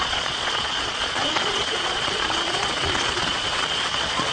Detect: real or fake fake